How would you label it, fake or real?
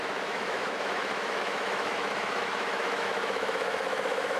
fake